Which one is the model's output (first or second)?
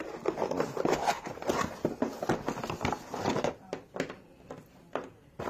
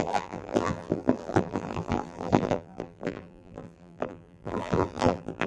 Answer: second